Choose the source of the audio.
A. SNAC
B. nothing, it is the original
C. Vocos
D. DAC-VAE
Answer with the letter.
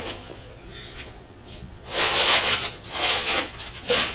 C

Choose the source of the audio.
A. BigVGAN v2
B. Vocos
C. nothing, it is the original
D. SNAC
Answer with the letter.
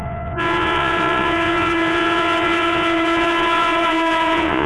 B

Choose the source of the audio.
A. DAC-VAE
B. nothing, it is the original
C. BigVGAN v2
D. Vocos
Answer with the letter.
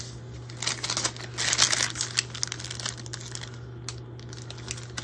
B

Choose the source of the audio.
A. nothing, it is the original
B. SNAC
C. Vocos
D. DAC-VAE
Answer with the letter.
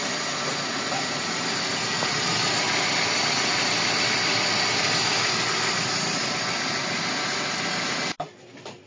A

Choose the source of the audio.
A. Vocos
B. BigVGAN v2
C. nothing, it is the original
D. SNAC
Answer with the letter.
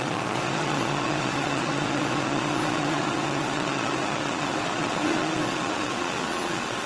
A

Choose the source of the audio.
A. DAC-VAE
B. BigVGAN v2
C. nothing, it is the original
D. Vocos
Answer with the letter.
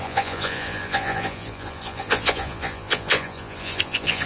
D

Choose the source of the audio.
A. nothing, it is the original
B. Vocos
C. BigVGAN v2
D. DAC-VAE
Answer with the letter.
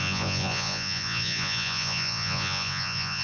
B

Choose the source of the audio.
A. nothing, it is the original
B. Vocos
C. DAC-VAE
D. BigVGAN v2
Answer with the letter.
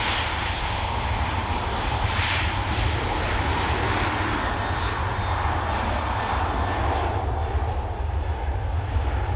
A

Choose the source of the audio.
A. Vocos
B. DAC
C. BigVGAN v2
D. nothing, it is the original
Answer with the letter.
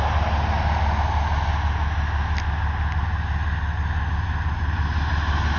D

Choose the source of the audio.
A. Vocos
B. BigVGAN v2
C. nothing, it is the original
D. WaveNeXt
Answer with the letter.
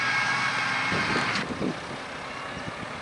C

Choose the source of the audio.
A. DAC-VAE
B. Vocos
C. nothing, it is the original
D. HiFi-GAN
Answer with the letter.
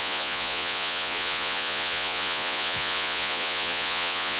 B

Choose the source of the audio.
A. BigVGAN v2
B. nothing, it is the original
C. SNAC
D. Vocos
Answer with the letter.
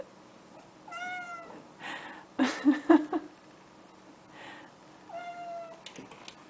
B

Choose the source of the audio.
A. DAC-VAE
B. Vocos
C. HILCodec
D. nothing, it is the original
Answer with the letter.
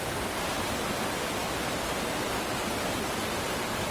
D